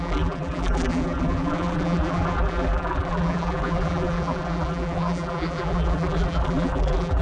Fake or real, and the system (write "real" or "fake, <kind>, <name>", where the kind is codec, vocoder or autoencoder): fake, vocoder, BigVGAN v2